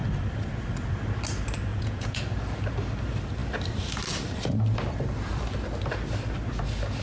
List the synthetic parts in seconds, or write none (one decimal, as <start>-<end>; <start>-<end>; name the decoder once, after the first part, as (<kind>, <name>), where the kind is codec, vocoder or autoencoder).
1.7-2.2 (vocoder, Vocos)